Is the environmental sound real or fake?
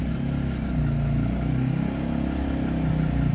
real